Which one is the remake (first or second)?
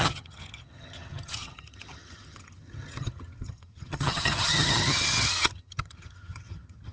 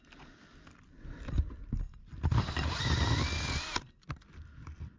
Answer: first